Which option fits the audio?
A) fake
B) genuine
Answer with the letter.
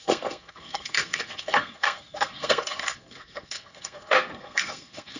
A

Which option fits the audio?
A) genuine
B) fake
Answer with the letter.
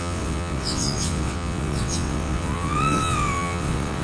B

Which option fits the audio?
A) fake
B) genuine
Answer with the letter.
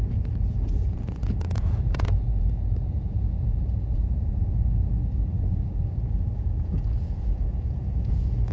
A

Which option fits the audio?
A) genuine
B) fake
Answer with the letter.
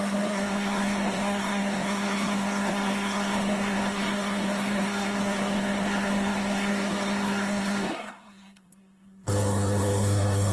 B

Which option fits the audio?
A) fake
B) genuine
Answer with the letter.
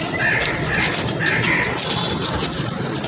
B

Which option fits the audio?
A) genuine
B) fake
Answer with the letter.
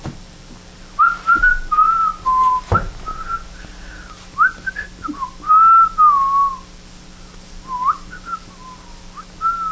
A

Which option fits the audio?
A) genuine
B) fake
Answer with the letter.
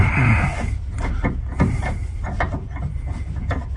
A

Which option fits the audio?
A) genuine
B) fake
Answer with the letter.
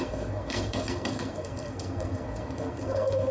B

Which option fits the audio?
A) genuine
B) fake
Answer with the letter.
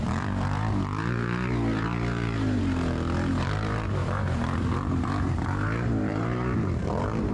B